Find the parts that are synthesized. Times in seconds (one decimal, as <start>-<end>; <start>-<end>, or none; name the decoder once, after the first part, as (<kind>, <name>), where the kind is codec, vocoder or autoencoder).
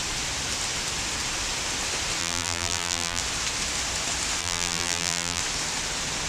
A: 2.2-3.2 (vocoder, BigVGAN v2); 4.4-5.4